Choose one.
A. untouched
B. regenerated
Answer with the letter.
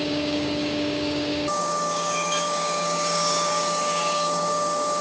B